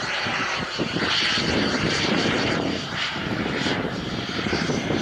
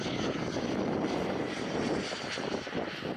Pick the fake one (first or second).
first